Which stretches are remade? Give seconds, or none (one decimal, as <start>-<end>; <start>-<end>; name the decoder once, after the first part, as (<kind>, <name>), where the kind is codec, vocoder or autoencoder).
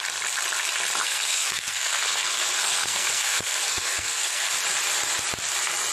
1.0-4.5 (codec, SNAC)